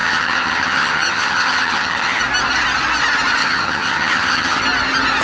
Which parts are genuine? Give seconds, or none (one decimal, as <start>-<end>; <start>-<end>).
2.2-3.4; 4.6-5.2